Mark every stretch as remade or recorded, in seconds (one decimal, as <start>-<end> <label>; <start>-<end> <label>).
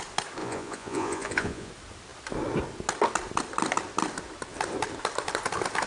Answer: 0.0-0.4 recorded; 0.4-1.7 remade; 1.7-5.9 recorded